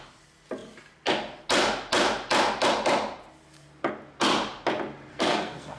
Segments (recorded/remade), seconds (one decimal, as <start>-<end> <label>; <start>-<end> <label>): 0.0-5.1 recorded; 5.1-5.8 remade